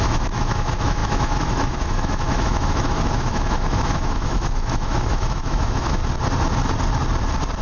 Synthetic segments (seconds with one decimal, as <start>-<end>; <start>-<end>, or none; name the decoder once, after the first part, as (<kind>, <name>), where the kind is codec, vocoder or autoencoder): 0.0-6.0 (autoencoder, DAC-VAE)